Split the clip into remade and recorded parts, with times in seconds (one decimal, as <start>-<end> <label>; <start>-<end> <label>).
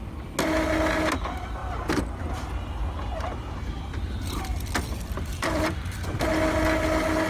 0.0-4.5 recorded; 4.5-5.8 remade; 5.8-7.3 recorded